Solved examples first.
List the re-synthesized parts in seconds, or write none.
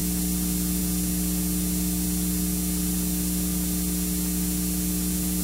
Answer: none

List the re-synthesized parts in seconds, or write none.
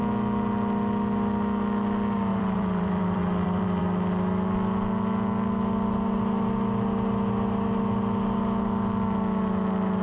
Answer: 2.3-3.8 (vocoder, BigVGAN v2)